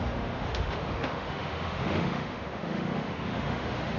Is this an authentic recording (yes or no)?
no